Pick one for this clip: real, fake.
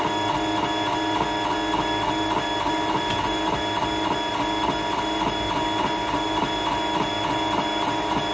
real